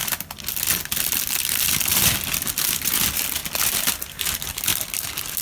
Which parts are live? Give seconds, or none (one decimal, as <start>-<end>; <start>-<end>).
0.0-5.4